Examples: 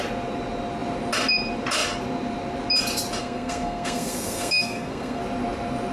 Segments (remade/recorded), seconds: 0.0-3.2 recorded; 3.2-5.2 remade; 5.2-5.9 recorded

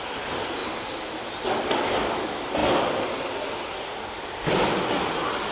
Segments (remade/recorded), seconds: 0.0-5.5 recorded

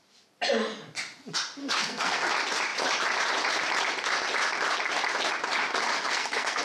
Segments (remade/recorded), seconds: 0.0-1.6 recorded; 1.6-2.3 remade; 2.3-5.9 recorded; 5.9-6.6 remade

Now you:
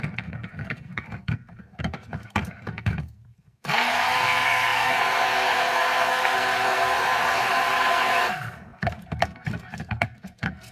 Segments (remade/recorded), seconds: 0.0-10.7 remade